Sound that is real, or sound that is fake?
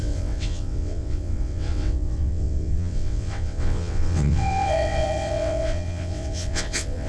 fake